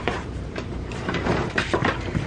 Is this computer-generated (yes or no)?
yes